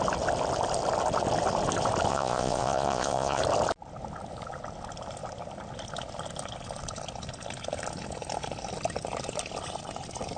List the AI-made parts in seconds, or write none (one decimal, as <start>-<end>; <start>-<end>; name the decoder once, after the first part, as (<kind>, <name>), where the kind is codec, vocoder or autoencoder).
2.1-3.4 (vocoder, Vocos)